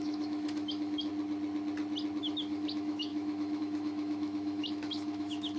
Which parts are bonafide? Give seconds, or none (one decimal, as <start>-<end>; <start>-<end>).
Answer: 1.1-2.2